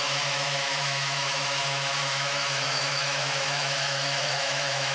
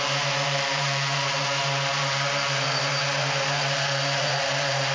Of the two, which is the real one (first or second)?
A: second